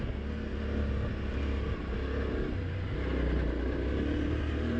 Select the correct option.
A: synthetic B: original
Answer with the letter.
B